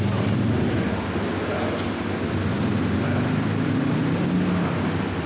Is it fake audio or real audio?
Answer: real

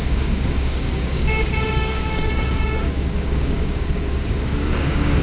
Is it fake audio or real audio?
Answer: fake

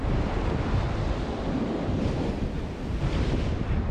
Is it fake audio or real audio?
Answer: real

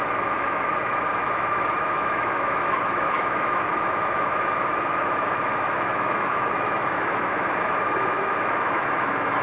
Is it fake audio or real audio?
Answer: fake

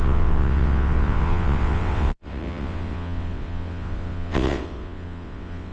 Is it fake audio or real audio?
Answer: fake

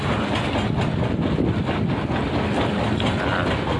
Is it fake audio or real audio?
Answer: real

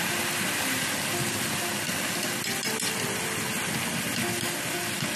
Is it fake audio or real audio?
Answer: real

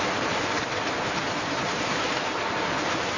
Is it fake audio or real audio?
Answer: fake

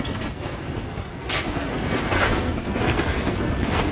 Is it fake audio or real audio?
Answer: fake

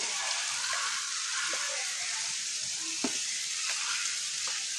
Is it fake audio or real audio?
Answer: fake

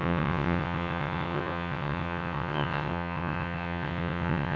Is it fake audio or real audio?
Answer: fake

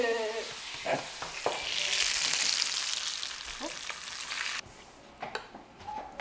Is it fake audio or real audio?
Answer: real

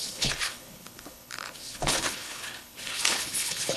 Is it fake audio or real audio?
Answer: fake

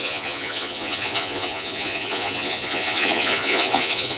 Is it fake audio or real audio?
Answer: fake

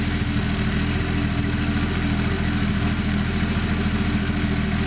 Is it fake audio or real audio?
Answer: real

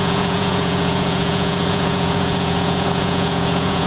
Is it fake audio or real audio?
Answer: fake